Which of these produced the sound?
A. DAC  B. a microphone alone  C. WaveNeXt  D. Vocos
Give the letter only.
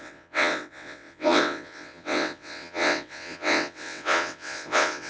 C